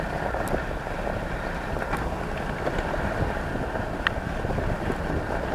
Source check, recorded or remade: recorded